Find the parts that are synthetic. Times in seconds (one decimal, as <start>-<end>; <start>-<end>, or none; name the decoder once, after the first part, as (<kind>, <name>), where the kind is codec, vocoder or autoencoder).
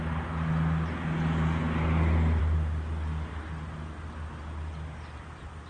none